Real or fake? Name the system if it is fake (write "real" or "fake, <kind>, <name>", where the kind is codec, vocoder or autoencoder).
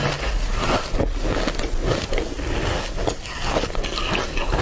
real